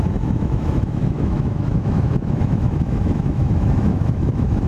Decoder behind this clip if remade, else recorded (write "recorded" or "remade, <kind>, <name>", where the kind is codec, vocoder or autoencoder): remade, autoencoder, DAC-VAE